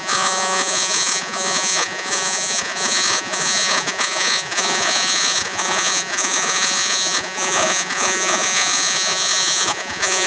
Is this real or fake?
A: fake